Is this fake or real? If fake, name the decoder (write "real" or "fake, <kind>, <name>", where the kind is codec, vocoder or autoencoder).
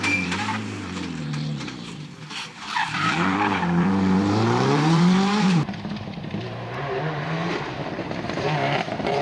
fake, vocoder, BigVGAN v2